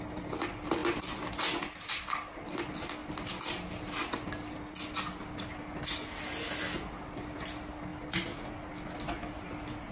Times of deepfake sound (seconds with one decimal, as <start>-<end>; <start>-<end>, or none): none